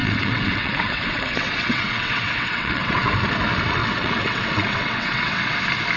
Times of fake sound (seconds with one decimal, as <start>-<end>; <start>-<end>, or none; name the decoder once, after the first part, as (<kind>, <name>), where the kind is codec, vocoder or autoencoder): 0.0-3.1 (vocoder, WaveNeXt); 3.8-5.6